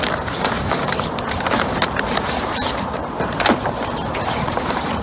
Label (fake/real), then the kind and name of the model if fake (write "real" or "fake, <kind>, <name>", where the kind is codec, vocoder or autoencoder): fake, vocoder, BigVGAN v2